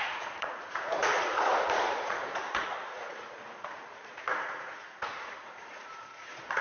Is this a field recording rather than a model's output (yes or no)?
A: no